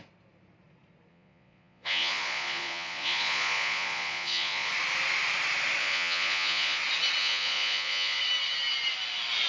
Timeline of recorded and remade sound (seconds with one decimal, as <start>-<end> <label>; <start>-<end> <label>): 0.0-1.1 recorded; 1.1-4.7 remade; 4.7-5.8 recorded; 5.8-6.8 remade; 6.8-7.2 recorded; 7.2-8.2 remade; 8.2-9.5 recorded